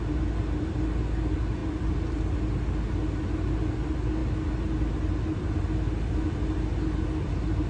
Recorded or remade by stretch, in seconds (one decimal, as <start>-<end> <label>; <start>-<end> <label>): 0.0-7.7 recorded